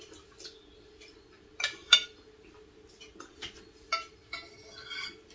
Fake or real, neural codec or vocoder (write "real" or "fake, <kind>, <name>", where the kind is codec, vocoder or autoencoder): real